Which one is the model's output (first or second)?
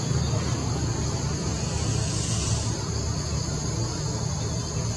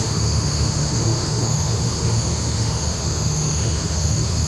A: second